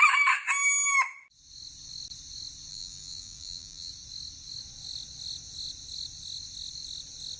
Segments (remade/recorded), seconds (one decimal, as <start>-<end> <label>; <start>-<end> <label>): 0.0-2.7 recorded; 2.7-3.9 remade; 3.9-7.4 recorded